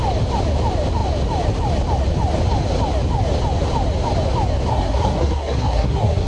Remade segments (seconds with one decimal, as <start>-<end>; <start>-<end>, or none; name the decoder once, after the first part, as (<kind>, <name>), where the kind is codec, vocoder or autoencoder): 4.7-6.3 (codec, SNAC)